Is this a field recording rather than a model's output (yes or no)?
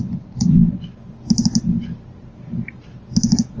yes